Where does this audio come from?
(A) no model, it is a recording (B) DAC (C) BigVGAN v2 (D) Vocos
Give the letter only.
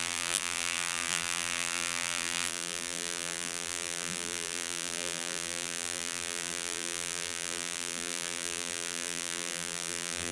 C